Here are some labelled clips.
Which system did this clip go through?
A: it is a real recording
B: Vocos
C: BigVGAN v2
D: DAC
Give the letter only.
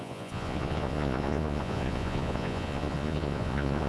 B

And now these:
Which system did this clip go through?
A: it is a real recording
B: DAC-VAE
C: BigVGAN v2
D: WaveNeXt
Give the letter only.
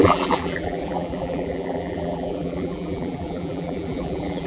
C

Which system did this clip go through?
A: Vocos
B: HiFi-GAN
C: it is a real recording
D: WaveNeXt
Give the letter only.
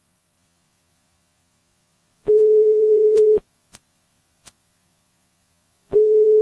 A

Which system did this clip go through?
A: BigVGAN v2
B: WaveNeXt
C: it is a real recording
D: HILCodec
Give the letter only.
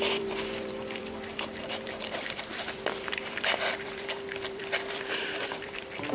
A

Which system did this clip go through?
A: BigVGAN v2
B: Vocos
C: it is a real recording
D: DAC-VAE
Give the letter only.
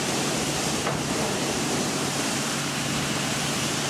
A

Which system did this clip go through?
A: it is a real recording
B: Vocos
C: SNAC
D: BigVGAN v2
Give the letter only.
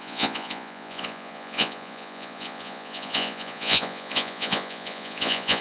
B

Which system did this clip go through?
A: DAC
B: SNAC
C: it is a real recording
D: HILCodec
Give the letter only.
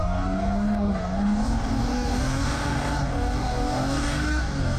A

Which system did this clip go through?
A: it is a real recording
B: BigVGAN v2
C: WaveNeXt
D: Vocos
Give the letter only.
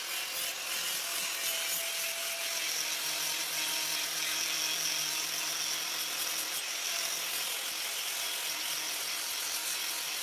A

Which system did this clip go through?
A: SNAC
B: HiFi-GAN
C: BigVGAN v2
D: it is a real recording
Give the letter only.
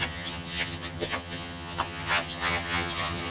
B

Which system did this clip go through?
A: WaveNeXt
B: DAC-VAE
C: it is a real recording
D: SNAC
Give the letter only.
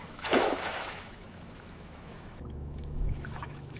B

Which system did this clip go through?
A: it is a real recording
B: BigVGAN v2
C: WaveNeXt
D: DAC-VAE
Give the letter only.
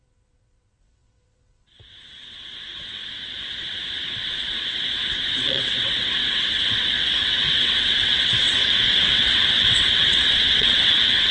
C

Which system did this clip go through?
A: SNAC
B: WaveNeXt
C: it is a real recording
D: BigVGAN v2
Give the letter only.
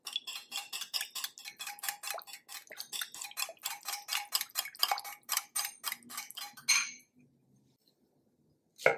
C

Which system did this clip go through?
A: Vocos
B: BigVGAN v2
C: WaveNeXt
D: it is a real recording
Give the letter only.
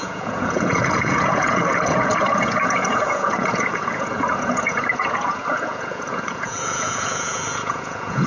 A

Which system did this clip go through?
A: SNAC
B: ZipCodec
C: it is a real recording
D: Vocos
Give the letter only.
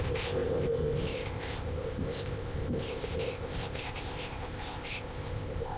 B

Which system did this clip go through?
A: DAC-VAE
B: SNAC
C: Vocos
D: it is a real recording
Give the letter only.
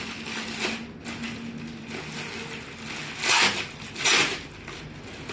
D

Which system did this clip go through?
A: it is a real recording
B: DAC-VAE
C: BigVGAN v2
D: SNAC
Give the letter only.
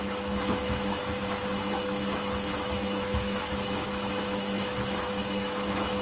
B